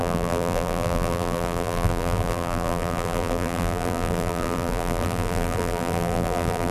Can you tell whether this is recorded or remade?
remade